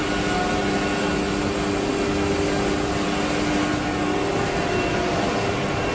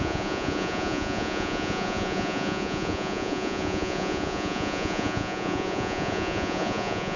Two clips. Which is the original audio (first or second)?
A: first